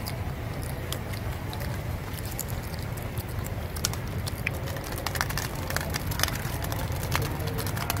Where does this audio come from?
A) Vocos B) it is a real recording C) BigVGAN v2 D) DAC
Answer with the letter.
C